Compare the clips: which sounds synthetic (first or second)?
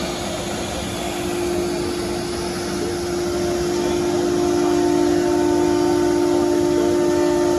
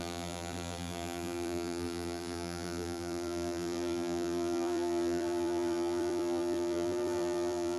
second